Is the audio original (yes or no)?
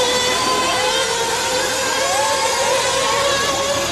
yes